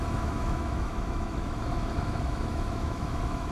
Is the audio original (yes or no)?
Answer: no